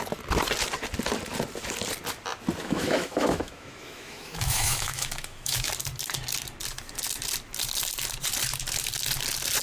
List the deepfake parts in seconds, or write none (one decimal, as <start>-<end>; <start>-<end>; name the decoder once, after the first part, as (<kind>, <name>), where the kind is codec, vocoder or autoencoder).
2.6-5.7 (autoencoder, DAC-VAE)